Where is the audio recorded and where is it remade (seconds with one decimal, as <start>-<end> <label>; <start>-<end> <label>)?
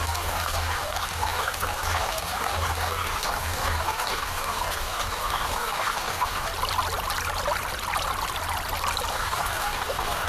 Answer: 0.0-6.5 remade; 6.5-9.1 recorded; 9.1-10.3 remade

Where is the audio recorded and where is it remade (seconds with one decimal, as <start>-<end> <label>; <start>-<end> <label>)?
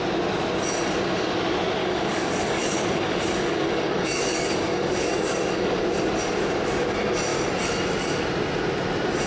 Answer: 0.0-1.8 recorded; 1.8-5.8 remade; 5.8-9.3 recorded